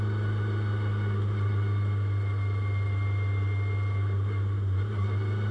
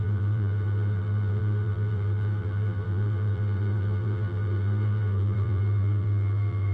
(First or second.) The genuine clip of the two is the first